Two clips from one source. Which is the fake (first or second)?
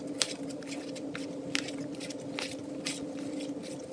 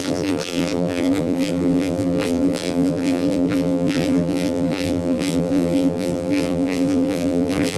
second